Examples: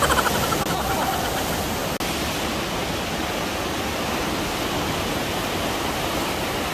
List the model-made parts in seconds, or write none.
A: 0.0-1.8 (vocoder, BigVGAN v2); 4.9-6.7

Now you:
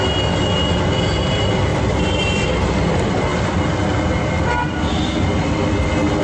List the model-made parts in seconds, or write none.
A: none